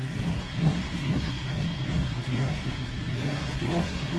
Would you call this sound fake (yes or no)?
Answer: yes